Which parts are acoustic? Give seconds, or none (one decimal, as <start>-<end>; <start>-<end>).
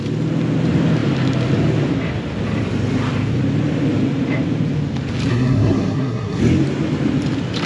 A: 0.0-5.3; 6.4-7.7